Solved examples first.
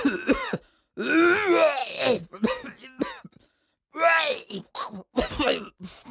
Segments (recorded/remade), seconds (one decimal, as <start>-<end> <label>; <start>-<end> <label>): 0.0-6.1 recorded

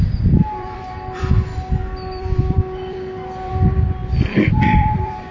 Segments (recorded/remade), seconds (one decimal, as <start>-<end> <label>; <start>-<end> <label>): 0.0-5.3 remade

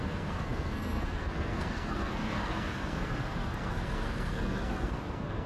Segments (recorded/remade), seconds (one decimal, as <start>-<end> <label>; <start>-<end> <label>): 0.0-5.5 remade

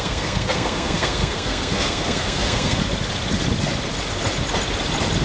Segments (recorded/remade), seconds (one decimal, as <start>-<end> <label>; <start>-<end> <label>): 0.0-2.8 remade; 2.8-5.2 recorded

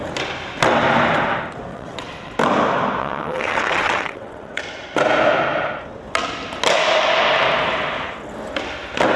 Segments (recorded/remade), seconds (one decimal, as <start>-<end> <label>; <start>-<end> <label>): 0.0-1.7 recorded; 1.7-2.3 remade; 2.3-3.0 recorded; 3.0-4.6 remade; 4.6-9.2 recorded

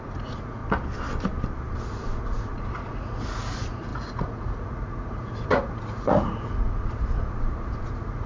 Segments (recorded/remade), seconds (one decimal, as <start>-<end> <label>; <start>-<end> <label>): 0.0-0.6 remade; 0.6-1.8 recorded; 1.8-8.3 remade

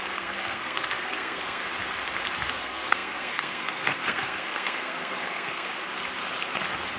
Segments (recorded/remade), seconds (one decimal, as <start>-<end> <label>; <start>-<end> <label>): 0.0-1.6 remade; 1.6-2.6 recorded; 2.6-5.8 remade; 5.8-7.0 recorded